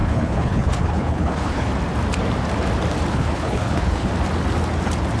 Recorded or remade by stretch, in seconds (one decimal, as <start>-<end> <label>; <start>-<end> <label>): 0.0-1.7 remade; 1.7-3.1 recorded; 3.1-4.1 remade; 4.1-5.2 recorded